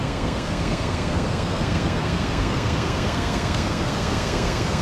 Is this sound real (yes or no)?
no